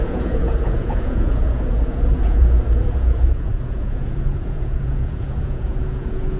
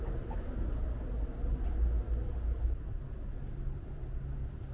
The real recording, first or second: second